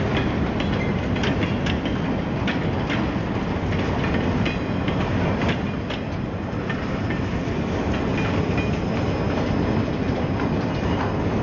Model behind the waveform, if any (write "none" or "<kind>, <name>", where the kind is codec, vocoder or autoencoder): none